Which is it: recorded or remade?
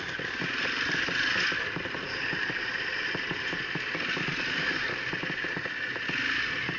recorded